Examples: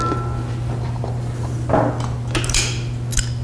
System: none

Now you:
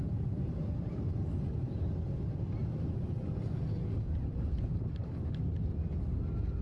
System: none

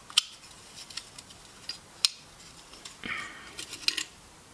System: none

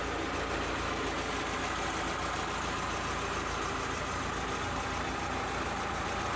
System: none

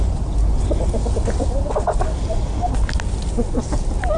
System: none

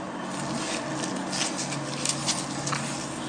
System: none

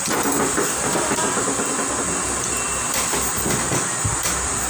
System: none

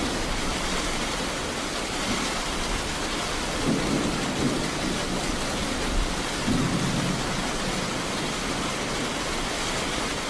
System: none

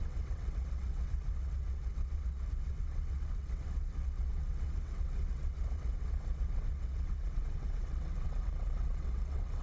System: vocoder, WaveNeXt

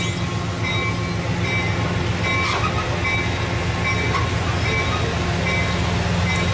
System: none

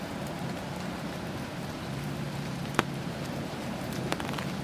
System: vocoder, BigVGAN v2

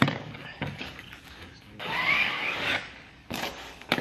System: codec, DAC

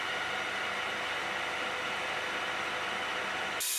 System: none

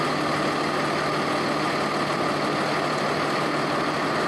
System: none